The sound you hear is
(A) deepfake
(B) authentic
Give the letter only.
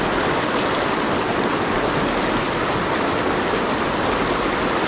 B